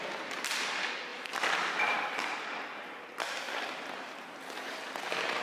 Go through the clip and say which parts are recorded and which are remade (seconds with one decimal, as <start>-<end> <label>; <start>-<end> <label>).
0.0-5.4 recorded